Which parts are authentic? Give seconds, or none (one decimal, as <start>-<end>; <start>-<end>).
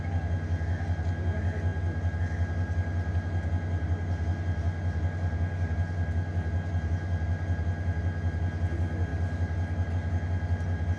0.0-11.0